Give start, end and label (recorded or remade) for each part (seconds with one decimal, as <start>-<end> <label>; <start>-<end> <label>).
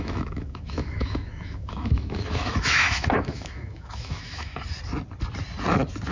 0.0-4.5 remade; 4.5-6.1 recorded